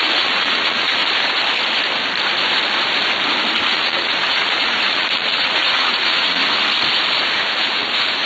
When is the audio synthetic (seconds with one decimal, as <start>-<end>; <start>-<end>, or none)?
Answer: 0.0-1.0; 3.6-6.4; 7.6-8.3